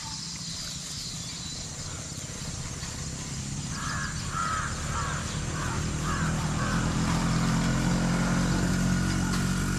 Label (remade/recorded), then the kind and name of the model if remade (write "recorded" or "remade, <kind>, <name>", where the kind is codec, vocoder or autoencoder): recorded